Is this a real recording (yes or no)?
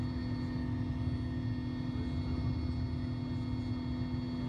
yes